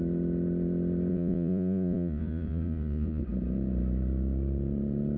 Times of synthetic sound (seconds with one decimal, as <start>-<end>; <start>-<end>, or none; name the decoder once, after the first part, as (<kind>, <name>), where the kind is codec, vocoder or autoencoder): 1.1-3.2 (vocoder, Vocos)

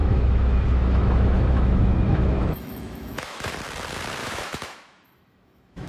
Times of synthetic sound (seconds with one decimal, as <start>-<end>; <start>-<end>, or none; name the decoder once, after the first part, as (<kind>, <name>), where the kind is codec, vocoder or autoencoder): 0.0-3.5 (autoencoder, DAC-VAE); 4.2-5.9

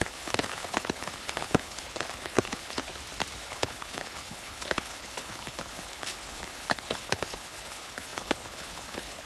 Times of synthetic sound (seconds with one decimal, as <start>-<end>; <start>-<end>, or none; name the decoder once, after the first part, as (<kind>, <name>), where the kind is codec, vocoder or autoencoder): 0.0-2.9 (codec, HILCodec); 3.4-9.3

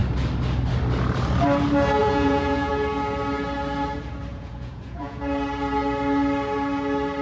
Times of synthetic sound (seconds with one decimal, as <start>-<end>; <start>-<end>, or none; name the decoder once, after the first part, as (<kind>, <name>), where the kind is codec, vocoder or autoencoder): 2.0-2.7 (vocoder, Vocos); 4.3-5.2

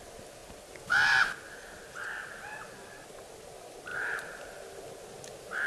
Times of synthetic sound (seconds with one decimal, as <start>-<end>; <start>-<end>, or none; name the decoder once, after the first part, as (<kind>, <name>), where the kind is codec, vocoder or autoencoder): none